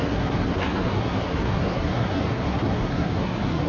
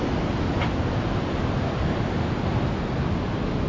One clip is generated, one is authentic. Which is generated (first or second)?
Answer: first